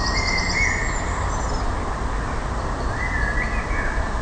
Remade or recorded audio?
recorded